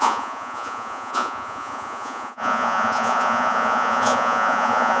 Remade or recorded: remade